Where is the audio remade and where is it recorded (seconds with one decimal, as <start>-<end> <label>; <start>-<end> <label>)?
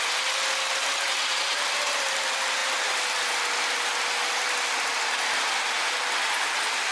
0.0-6.9 recorded